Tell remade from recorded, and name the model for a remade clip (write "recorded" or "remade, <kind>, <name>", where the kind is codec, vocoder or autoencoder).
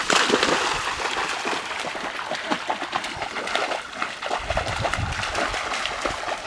recorded